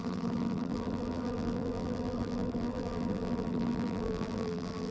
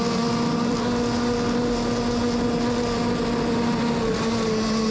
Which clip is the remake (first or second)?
first